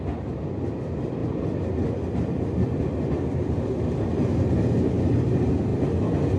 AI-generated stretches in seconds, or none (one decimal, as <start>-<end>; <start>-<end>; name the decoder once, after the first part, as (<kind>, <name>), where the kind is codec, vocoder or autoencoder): none